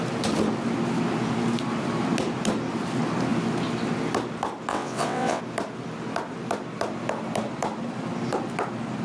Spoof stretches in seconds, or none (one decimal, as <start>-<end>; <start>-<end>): 4.7-5.4